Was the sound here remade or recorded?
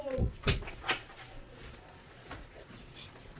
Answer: remade